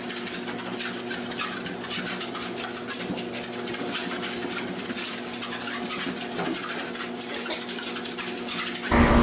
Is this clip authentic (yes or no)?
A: yes